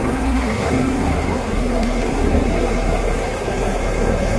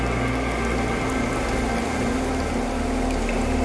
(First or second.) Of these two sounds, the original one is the second